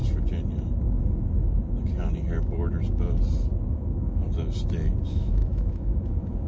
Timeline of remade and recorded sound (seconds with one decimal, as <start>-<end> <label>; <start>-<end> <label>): 0.0-3.7 recorded; 3.7-4.2 remade; 4.2-5.0 recorded; 5.0-6.5 remade